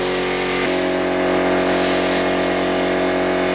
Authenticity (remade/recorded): recorded